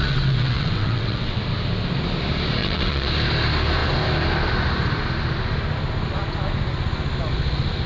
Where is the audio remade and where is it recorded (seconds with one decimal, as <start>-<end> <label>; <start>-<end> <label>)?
0.0-1.4 remade; 1.4-2.6 recorded; 2.6-3.1 remade; 3.1-7.9 recorded